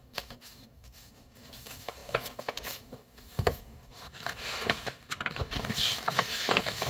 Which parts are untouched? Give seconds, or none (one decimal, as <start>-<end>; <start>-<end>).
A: none